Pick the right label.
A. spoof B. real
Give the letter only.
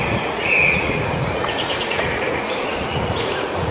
A